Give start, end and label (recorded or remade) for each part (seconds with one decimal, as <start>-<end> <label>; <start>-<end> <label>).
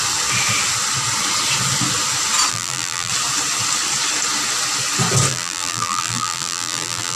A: 0.0-2.5 recorded; 2.5-3.1 remade; 3.1-5.3 recorded; 5.3-7.2 remade